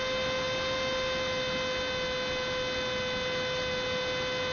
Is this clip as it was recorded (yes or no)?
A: yes